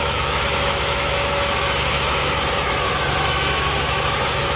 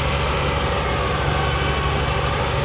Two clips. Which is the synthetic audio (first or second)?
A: first